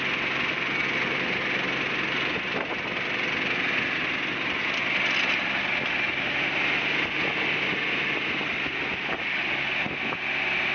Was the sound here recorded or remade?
recorded